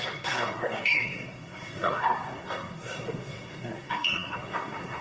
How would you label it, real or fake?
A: fake